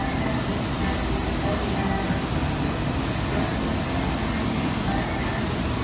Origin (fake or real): real